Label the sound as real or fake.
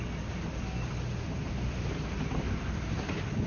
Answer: real